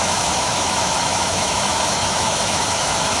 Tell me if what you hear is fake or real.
fake